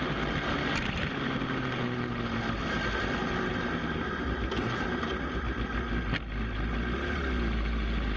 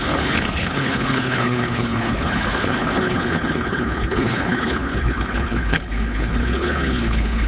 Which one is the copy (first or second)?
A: second